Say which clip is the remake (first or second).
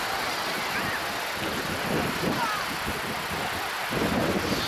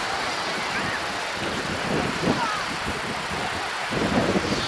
second